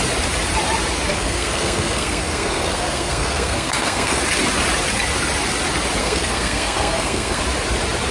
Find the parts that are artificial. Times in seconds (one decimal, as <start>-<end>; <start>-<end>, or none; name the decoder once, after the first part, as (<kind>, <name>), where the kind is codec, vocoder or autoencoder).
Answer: 1.1-4.2 (codec, SNAC); 6.0-7.4